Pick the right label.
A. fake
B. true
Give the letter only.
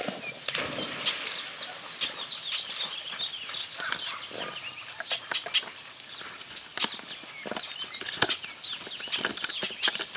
B